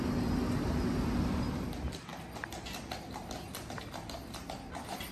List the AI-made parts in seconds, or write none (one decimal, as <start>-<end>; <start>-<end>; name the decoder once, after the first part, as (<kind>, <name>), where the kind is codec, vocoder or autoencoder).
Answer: none